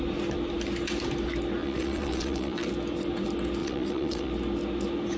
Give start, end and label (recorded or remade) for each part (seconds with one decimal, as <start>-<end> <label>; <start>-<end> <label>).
0.0-1.6 recorded; 1.6-2.7 remade; 2.7-3.6 recorded; 3.6-4.3 remade; 4.3-5.2 recorded